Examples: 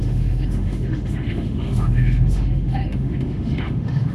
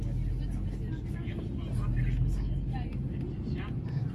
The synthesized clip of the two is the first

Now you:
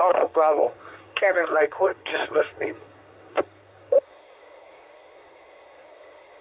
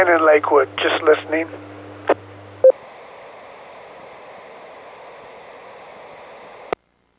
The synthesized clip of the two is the first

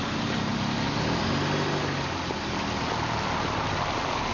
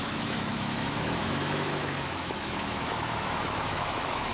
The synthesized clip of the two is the second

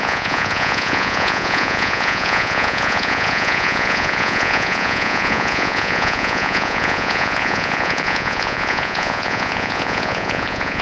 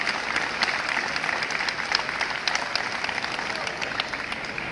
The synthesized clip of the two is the first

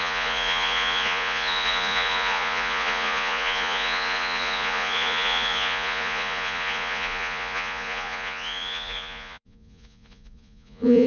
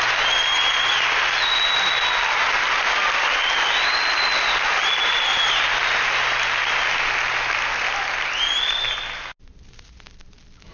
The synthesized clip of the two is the first